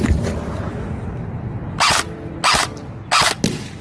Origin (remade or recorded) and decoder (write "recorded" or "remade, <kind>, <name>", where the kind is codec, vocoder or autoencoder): recorded